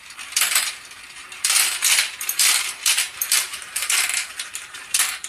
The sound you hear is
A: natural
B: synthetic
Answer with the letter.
B